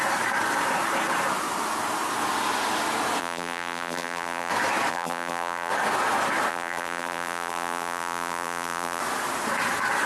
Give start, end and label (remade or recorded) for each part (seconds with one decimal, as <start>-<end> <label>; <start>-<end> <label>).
0.0-3.2 recorded; 3.2-4.5 remade; 4.5-4.9 recorded; 4.9-5.7 remade; 5.7-6.5 recorded; 6.5-9.0 remade; 9.0-10.1 recorded